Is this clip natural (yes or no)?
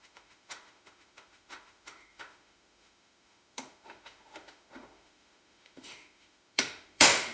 no